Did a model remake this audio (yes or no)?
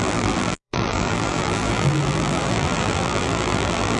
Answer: yes